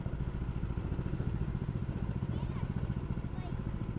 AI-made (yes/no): no